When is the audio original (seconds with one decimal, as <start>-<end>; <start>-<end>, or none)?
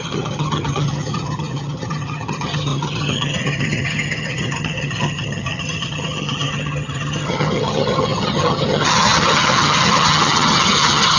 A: none